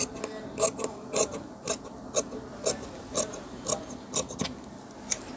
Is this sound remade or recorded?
recorded